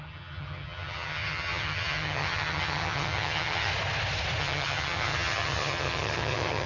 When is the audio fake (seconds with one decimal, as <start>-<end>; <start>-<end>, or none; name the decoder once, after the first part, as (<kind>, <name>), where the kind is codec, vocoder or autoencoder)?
0.0-3.7 (vocoder, HiFi-GAN); 4.4-6.7